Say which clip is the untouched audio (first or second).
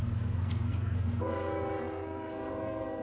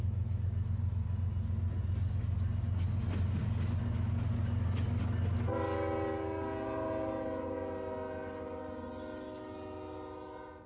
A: second